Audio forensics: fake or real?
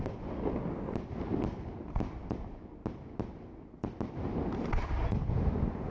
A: real